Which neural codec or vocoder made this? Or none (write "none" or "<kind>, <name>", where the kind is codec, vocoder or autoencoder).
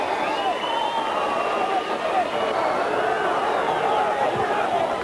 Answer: none